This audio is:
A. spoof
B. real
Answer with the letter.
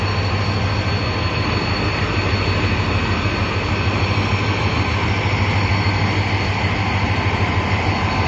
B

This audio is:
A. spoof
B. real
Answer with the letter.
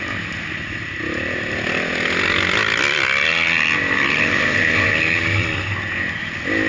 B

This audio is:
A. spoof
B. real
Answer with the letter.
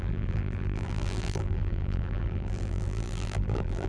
A